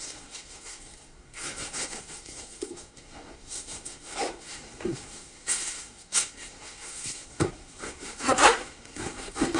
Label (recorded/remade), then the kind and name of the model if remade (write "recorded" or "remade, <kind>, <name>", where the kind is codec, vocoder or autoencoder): remade, codec, SNAC